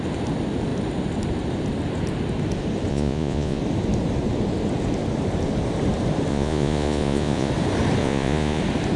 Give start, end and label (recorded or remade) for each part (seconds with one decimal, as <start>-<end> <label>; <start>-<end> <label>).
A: 0.0-2.9 recorded; 2.9-3.6 remade; 3.6-6.3 recorded; 6.3-7.5 remade; 7.5-8.0 recorded; 8.0-8.6 remade; 8.6-9.0 recorded